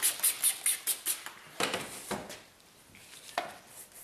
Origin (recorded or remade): recorded